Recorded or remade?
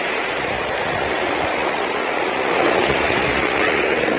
remade